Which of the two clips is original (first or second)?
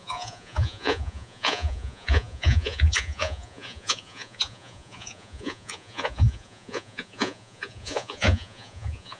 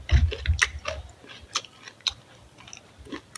second